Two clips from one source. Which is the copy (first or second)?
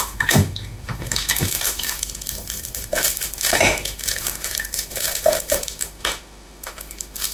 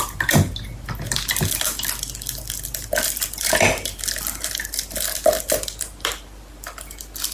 first